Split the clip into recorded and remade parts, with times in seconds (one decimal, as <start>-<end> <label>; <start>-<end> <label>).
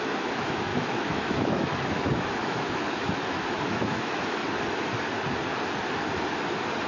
0.0-4.4 remade; 4.4-6.9 recorded